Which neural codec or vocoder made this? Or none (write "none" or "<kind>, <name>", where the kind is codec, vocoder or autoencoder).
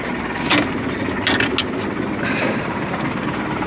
none